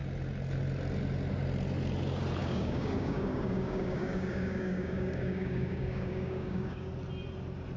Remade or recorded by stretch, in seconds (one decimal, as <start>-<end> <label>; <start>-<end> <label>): 0.0-2.4 recorded; 2.4-6.9 remade; 6.9-7.8 recorded